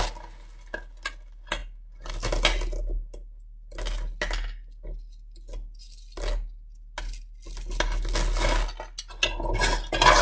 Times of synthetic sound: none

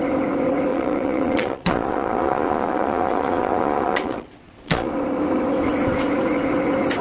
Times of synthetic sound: 0.7-4.9

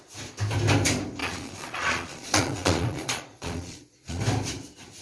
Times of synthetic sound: 1.2-4.2

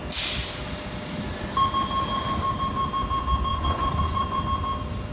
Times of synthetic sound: 3.5-4.4

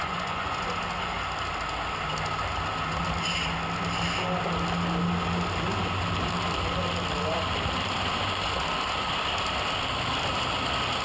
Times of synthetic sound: 0.0-0.7

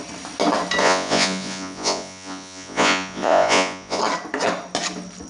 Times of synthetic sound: 0.8-4.0

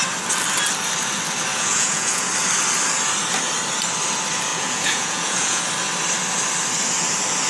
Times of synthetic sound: 1.5-2.3; 4.5-5.6

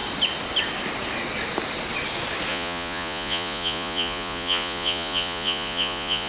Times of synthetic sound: 2.5-6.3